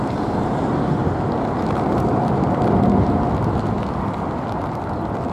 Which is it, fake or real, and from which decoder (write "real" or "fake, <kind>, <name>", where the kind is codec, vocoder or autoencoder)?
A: real